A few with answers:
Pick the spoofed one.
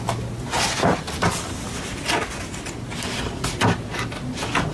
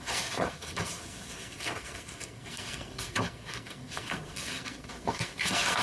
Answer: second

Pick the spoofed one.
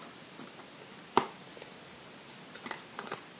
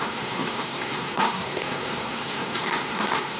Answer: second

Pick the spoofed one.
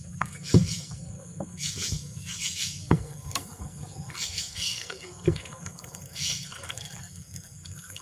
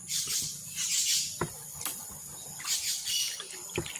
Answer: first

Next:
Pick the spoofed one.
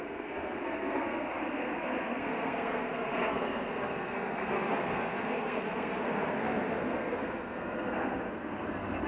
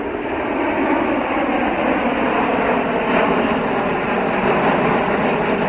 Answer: first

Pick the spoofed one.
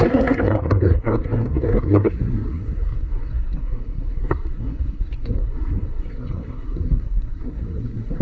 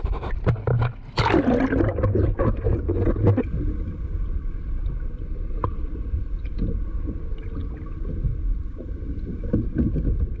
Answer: first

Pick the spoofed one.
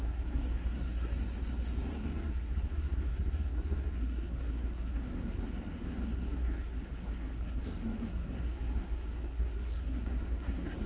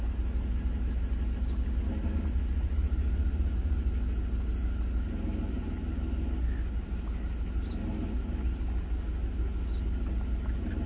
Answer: first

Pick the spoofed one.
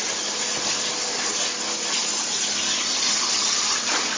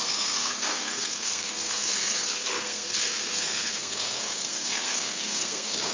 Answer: second